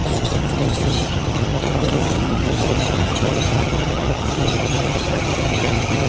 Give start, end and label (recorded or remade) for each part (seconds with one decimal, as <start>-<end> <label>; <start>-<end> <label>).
0.0-6.1 remade